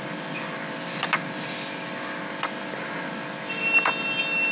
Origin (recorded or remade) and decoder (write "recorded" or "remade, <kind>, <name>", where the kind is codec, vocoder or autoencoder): recorded